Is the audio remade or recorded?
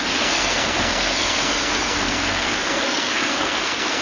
remade